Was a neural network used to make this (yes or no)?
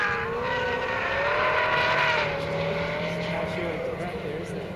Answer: no